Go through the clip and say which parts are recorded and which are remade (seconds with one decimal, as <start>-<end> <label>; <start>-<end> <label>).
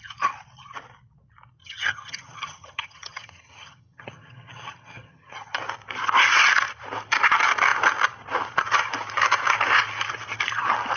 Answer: 0.0-1.6 recorded; 1.6-5.6 remade; 5.6-11.0 recorded